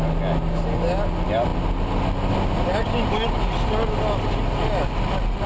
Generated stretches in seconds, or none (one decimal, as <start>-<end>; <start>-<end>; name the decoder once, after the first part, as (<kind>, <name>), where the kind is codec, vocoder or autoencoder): none